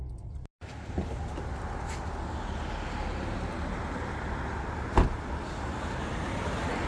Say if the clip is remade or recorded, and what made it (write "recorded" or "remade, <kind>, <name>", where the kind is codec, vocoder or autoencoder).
recorded